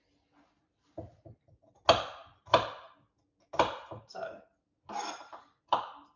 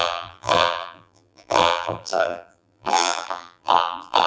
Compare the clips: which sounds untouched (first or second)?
first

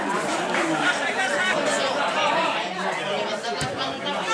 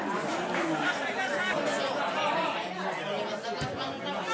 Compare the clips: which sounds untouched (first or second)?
second